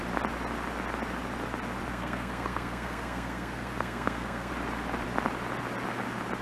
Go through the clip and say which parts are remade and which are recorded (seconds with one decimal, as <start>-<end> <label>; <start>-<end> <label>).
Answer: 0.0-1.9 recorded; 1.9-4.5 remade; 4.5-6.4 recorded

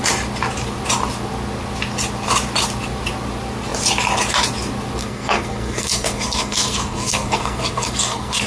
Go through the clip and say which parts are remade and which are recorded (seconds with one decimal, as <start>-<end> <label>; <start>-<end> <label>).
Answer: 0.0-5.0 recorded; 5.0-8.5 remade

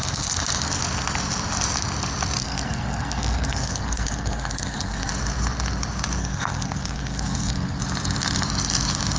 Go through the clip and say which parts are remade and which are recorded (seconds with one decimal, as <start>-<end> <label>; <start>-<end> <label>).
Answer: 0.0-2.4 recorded; 2.4-5.1 remade; 5.1-6.2 recorded; 6.2-7.8 remade; 7.8-9.2 recorded

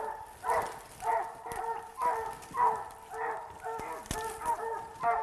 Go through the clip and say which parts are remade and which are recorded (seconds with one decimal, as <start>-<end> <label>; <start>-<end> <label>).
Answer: 0.0-5.2 recorded